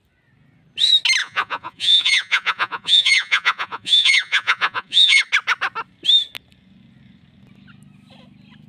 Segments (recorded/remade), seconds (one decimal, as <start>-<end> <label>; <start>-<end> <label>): 0.0-1.2 recorded; 1.2-5.2 remade; 5.2-8.7 recorded